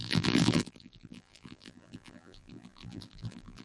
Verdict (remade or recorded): remade